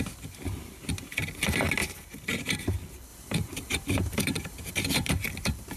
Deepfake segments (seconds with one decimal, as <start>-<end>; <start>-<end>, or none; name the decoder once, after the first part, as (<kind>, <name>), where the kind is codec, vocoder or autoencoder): 1.8-2.6 (vocoder, BigVGAN v2); 3.1-5.1